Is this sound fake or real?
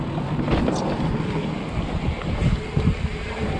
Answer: real